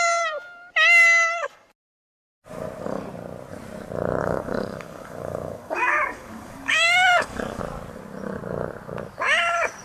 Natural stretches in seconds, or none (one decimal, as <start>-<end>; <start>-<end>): 0.0-4.2; 7.6-9.8